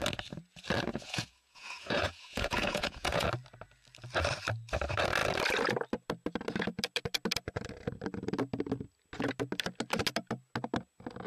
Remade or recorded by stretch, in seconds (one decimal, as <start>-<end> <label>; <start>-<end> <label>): 0.0-0.9 recorded; 0.9-3.3 remade; 3.3-11.3 recorded